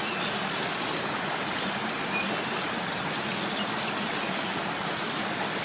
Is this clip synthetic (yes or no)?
no